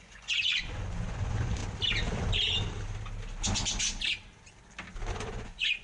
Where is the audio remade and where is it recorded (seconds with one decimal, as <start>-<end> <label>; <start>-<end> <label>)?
0.0-1.6 remade; 1.6-5.1 recorded; 5.1-5.8 remade